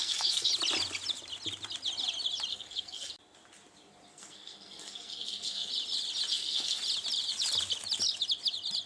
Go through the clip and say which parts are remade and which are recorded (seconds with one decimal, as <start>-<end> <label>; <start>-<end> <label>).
0.0-0.5 remade; 0.5-2.5 recorded; 2.5-3.1 remade; 3.1-4.1 recorded; 4.1-5.7 remade; 5.7-6.3 recorded; 6.3-6.8 remade; 6.8-8.9 recorded